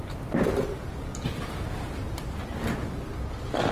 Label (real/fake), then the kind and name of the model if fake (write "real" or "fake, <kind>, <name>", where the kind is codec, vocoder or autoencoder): real